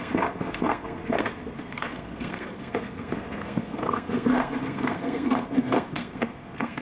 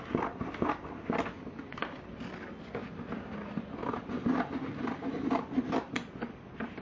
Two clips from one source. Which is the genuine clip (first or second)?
second